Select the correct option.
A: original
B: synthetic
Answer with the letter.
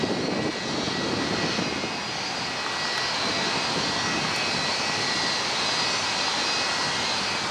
A